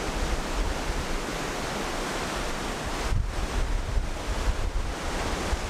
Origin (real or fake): real